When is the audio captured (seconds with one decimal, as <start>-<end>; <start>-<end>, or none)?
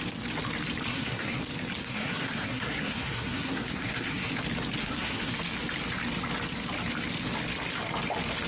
0.0-0.9; 1.4-1.8; 4.3-4.8; 5.3-8.5